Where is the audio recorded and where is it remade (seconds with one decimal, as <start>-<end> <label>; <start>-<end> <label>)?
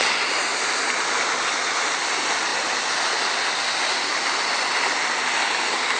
0.0-6.0 recorded